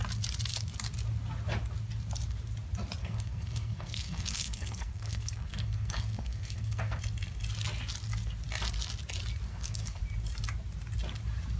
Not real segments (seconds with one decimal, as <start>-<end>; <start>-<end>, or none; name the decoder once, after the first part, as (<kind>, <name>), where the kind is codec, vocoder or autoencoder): 3.0-7.0 (codec, SNAC); 9.5-10.0